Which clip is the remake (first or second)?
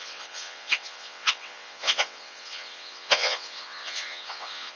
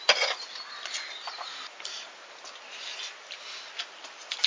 first